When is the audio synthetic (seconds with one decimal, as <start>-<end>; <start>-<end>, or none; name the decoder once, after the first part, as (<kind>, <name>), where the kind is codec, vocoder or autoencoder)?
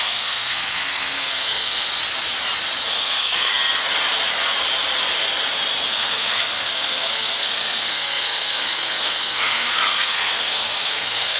0.0-2.0 (codec, SNAC); 2.9-3.5; 5.9-11.4